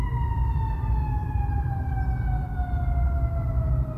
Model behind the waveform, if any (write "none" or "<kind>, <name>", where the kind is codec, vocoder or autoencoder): none